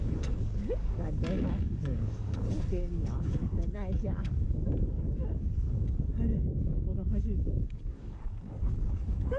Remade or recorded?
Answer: remade